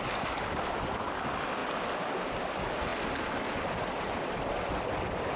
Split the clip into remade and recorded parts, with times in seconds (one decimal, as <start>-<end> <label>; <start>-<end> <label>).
0.0-5.4 recorded